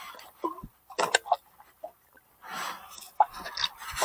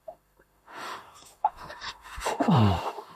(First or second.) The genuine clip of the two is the first